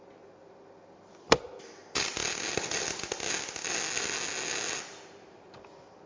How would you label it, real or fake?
real